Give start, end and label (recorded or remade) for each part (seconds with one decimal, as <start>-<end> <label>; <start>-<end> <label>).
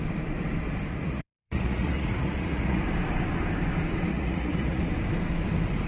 0.0-0.9 recorded; 0.9-2.8 remade; 2.8-4.1 recorded; 4.1-4.8 remade; 4.8-5.9 recorded